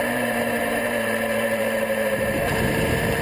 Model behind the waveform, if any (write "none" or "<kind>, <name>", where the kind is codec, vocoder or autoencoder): vocoder, BigVGAN v2